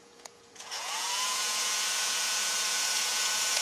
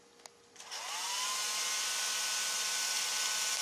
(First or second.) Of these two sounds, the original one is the second